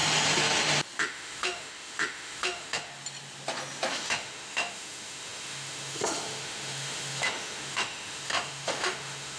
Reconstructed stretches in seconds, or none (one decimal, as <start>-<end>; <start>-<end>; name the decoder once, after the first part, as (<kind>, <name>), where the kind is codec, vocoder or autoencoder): 1.0-2.9 (autoencoder, DAC-VAE); 3.9-9.4